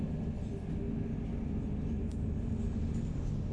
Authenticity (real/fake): real